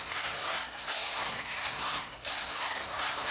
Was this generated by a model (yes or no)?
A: yes